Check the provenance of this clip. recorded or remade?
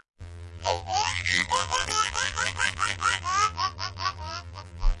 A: remade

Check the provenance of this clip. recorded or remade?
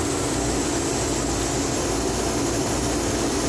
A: recorded